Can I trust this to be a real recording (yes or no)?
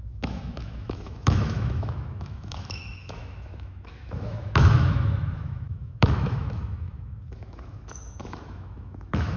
no